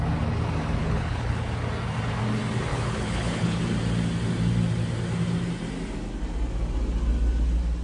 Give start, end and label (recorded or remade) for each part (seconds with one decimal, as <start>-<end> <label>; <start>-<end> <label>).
0.0-0.8 recorded; 0.8-1.5 remade; 1.5-2.7 recorded; 2.7-3.6 remade; 3.6-7.8 recorded